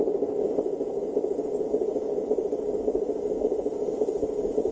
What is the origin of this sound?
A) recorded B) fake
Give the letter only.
A